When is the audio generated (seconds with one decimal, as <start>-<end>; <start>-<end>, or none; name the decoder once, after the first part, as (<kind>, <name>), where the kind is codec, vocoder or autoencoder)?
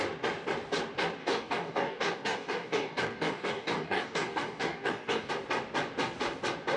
1.2-5.3 (codec, DAC)